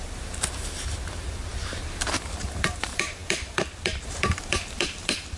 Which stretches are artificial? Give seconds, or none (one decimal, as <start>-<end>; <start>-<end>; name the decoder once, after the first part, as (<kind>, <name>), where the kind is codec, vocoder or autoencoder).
0.0-5.4 (vocoder, BigVGAN v2)